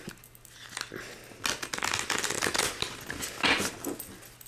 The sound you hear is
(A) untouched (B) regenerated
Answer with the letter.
A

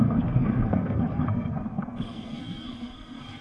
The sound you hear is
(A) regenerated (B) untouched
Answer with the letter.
A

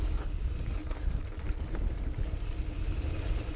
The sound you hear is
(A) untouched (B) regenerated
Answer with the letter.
A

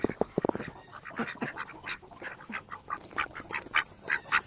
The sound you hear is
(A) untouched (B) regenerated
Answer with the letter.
A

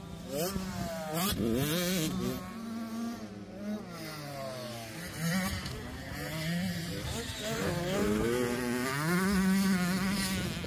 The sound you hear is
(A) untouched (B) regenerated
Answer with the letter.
A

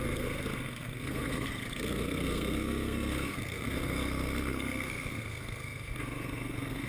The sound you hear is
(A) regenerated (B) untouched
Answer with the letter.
A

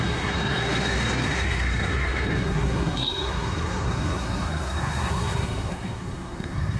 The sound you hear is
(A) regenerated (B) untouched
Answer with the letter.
A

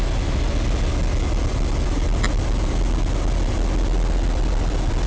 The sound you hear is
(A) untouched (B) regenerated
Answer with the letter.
A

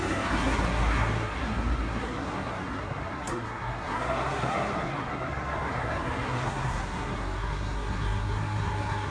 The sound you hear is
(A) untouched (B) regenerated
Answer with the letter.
B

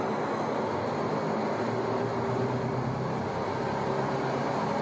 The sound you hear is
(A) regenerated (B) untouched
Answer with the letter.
B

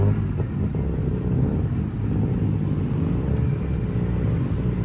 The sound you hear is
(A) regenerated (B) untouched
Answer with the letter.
B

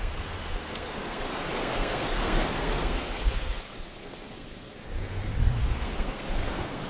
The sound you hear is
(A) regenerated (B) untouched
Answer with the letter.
A